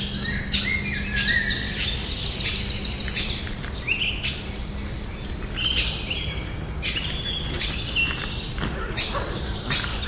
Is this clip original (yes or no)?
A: yes